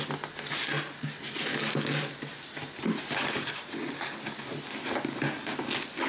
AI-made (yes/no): no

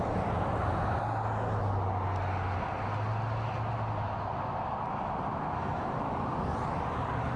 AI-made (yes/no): no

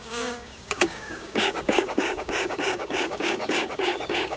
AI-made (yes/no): yes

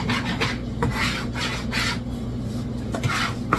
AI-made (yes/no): no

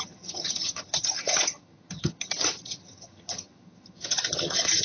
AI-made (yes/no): yes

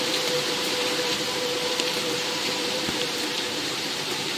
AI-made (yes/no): yes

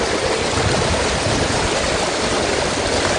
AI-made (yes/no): no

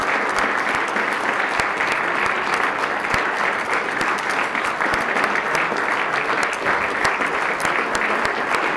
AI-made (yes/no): no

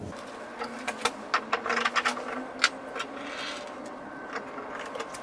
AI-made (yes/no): no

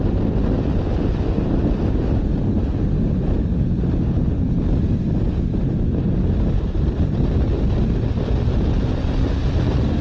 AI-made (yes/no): no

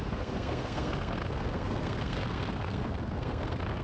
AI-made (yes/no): yes